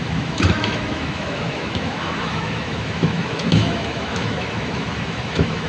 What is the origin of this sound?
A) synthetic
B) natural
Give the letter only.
A